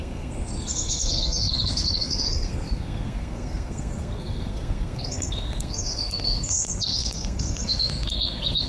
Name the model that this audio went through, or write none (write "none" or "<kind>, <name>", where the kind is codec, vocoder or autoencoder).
codec, SNAC